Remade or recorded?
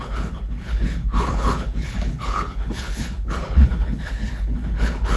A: remade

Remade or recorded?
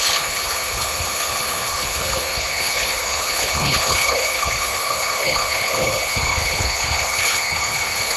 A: remade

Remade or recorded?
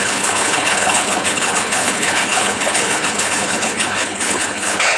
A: remade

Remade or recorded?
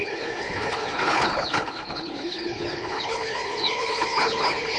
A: remade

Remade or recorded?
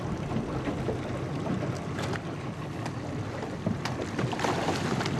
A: recorded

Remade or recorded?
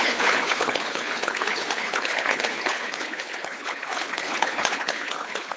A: remade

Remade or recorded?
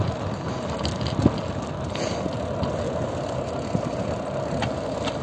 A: recorded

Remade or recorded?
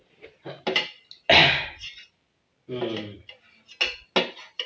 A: recorded